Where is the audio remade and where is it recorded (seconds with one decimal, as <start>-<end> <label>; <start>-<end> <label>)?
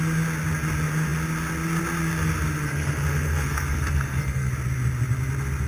0.0-2.6 recorded; 2.6-4.5 remade; 4.5-5.7 recorded